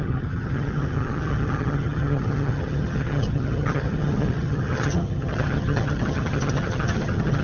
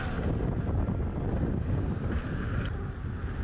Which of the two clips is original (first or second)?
second